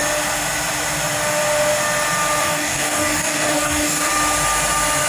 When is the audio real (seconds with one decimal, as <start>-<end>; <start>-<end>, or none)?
0.0-2.4; 4.1-5.1